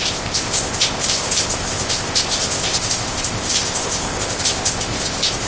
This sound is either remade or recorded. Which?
remade